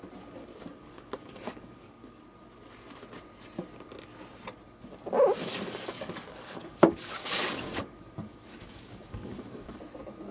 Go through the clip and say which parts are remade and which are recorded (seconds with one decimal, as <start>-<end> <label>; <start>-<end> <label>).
0.0-0.7 recorded; 0.7-2.2 remade; 2.2-5.4 recorded; 5.4-9.8 remade; 9.8-10.3 recorded